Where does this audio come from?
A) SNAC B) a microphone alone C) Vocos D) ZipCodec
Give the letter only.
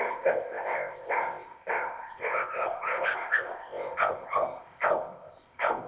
D